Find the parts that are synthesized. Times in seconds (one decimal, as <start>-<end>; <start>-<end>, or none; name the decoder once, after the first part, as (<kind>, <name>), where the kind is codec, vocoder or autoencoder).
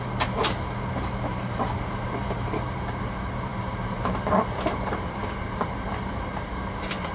0.0-7.1 (vocoder, BigVGAN v2)